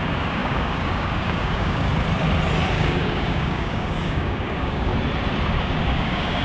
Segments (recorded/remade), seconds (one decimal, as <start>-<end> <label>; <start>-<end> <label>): 0.0-1.9 remade; 1.9-2.7 recorded; 2.7-4.9 remade; 4.9-5.6 recorded; 5.6-6.4 remade